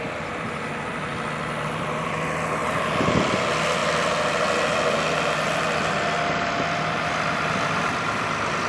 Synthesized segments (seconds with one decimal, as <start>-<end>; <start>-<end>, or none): none